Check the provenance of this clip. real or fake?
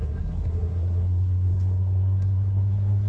fake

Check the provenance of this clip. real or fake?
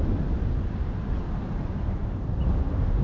real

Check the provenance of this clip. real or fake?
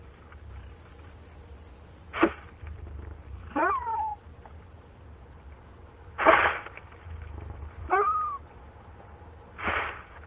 real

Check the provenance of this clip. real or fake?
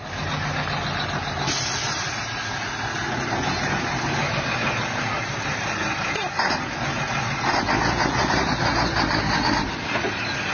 real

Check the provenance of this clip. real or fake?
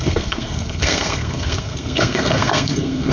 fake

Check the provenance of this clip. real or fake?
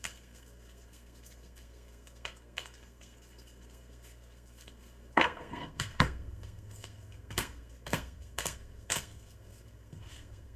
fake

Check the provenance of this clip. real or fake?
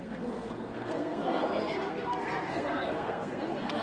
fake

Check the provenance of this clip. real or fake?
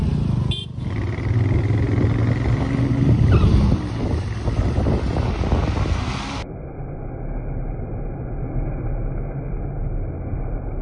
real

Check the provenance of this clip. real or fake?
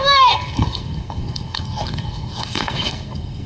fake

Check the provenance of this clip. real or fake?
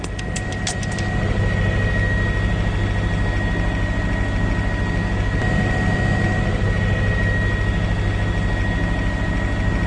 real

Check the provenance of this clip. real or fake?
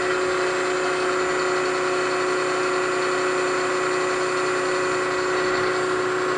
real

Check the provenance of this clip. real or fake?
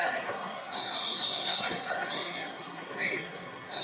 fake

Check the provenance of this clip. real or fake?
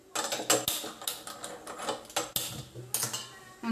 real